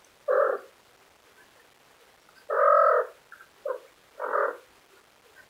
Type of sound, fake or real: real